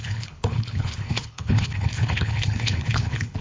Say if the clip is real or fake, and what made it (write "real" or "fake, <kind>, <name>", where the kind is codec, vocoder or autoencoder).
fake, codec, HILCodec